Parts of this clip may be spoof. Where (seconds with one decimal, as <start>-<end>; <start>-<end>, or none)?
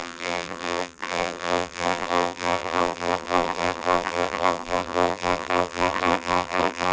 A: 0.0-6.9